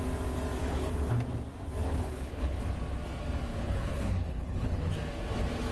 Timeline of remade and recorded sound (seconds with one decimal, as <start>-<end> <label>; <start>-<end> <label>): 0.0-0.6 recorded; 0.6-1.1 remade; 1.1-1.8 recorded; 1.8-2.6 remade; 2.6-3.5 recorded; 3.5-4.9 remade; 4.9-5.7 recorded